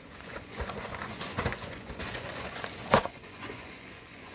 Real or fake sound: fake